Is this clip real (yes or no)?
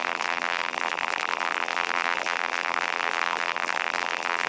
no